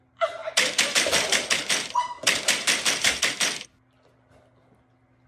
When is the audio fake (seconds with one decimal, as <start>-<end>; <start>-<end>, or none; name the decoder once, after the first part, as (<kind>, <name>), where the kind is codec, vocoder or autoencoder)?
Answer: 0.4-3.3 (vocoder, BigVGAN v2)